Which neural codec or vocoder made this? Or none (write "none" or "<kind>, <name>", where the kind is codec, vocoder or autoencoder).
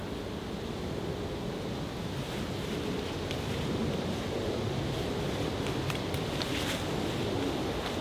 none